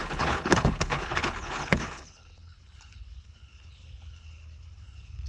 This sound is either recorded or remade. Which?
remade